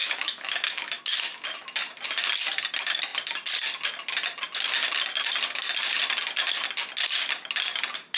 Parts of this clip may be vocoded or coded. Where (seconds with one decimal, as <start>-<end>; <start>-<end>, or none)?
0.0-1.0